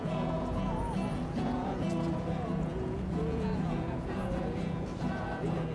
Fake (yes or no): yes